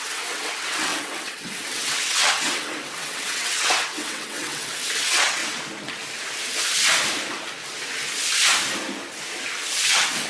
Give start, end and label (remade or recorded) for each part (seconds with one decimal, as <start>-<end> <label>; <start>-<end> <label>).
0.0-5.4 remade; 5.4-9.9 recorded; 9.9-10.3 remade